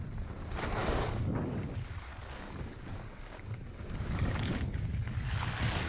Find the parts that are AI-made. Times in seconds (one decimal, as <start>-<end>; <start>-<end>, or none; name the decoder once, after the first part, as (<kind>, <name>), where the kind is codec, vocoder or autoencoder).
0.8-1.6 (codec, DAC); 2.1-5.9